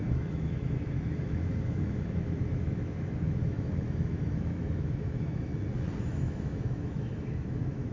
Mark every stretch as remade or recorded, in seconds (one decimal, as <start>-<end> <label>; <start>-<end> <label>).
0.0-5.5 remade; 5.5-6.0 recorded; 6.0-7.9 remade

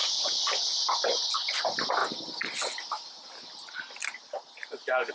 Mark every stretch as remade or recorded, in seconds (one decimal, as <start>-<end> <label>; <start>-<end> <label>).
0.0-5.1 recorded

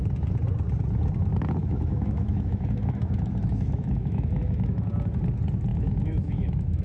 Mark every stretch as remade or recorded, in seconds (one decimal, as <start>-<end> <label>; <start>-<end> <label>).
0.0-1.6 recorded; 1.6-4.9 remade; 4.9-5.7 recorded; 5.7-6.8 remade

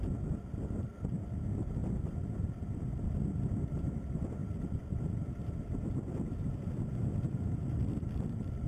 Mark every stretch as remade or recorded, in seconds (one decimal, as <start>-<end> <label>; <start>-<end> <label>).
0.0-1.8 recorded; 1.8-4.0 remade; 4.0-4.4 recorded; 4.4-7.9 remade; 7.9-8.7 recorded